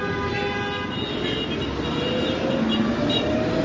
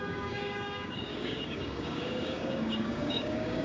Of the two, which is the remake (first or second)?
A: second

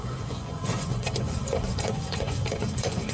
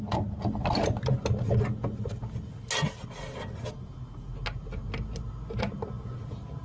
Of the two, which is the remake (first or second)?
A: first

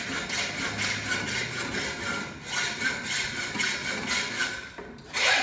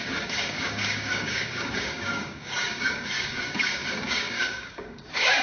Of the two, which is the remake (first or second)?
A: second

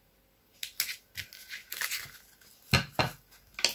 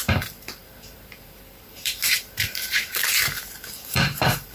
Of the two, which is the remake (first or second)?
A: second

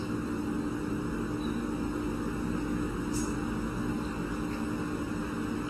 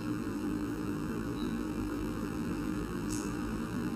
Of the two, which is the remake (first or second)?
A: second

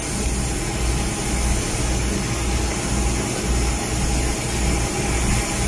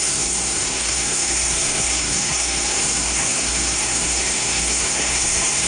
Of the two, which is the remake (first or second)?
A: second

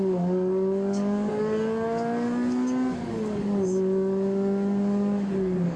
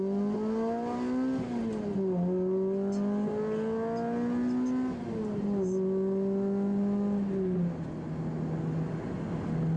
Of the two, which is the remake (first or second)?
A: first